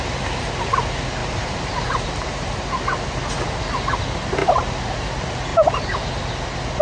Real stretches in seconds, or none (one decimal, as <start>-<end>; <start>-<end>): 0.0-1.2; 2.7-4.4; 5.1-5.5; 6.2-6.8